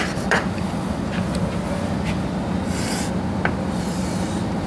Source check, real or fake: real